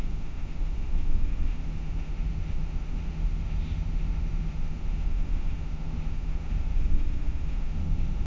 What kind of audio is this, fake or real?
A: fake